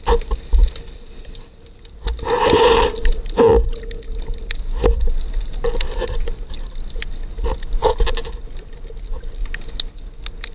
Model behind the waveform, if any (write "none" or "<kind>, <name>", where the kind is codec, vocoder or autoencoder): none